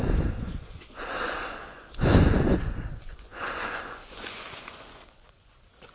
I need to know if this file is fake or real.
fake